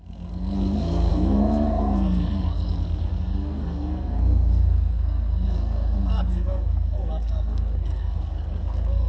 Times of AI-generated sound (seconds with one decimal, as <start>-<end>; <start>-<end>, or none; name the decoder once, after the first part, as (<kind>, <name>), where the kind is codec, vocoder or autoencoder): 0.0-9.1 (codec, SNAC)